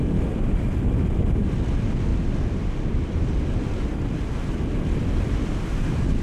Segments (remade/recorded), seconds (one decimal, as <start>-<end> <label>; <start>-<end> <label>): 0.0-6.2 recorded